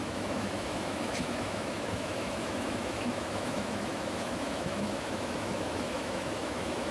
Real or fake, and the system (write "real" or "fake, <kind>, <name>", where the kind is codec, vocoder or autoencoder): fake, autoencoder, DAC-VAE